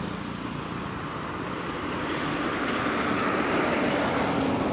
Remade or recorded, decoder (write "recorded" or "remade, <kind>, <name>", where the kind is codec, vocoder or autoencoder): recorded